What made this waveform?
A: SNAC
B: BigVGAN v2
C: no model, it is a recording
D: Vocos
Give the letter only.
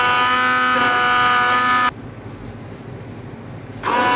C